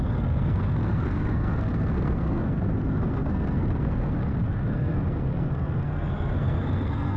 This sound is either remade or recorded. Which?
remade